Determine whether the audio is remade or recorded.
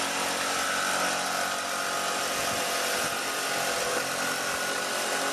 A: recorded